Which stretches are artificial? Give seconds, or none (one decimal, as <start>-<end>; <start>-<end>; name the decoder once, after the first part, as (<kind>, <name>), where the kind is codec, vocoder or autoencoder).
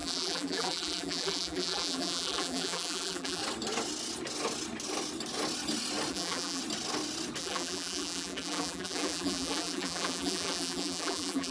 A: 0.0-3.4 (vocoder, BigVGAN v2); 6.1-6.6; 7.4-11.5